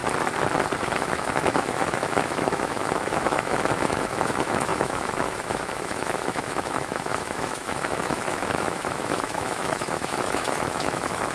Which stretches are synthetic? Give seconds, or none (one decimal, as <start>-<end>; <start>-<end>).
0.8-11.3